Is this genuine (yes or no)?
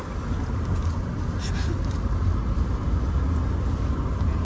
yes